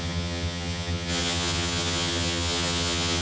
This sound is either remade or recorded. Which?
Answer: remade